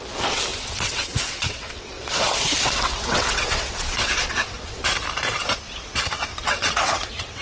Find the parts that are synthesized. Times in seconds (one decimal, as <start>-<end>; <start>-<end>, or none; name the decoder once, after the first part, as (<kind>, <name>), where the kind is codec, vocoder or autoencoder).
0.5-4.9 (vocoder, WaveNeXt); 6.3-7.4